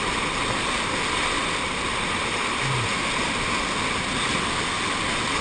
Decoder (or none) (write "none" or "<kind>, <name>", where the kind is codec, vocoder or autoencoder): none